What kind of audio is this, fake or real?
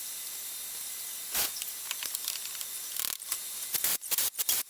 real